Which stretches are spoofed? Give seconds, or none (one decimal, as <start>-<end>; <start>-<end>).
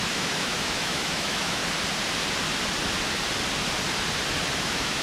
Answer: 0.0-1.6; 4.6-5.0